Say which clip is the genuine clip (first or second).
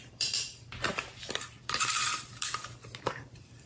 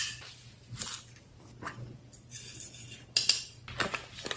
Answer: second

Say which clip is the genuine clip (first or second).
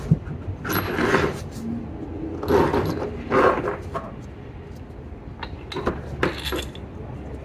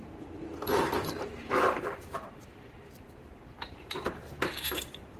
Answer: first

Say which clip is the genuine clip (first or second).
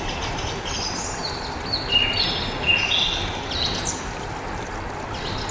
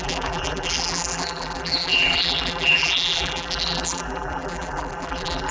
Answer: first